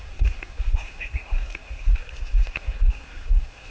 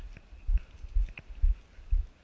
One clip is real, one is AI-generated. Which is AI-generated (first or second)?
first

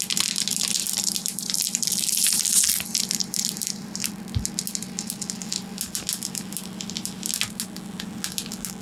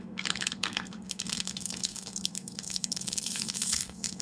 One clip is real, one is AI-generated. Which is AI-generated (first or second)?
second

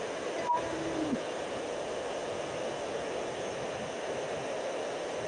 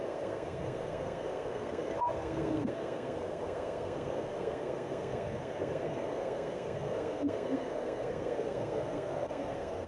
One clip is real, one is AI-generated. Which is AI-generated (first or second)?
second